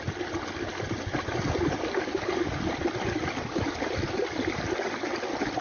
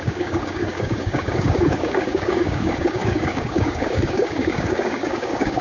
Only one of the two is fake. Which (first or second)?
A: second